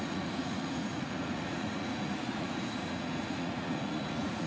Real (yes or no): no